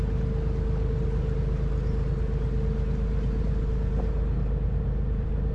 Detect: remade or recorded recorded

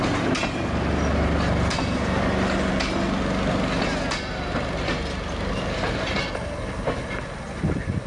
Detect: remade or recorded recorded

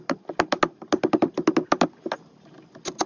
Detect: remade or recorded recorded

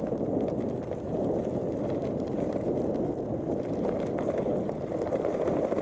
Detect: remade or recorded recorded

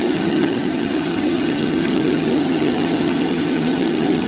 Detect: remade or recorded remade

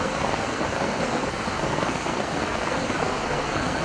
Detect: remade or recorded remade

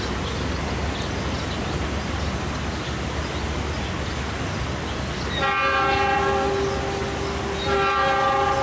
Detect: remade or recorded recorded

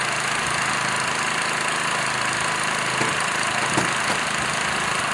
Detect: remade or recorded recorded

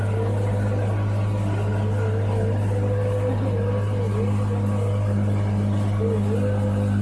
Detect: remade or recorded recorded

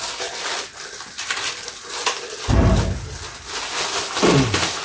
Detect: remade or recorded recorded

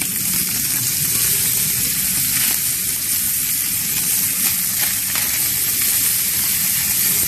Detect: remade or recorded recorded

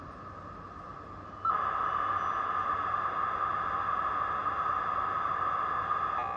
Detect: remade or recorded recorded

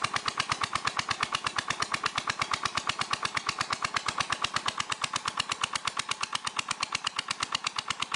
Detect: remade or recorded recorded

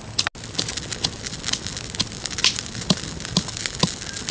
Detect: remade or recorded recorded